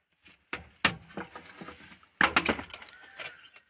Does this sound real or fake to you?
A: real